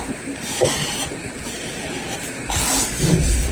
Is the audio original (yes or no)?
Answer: no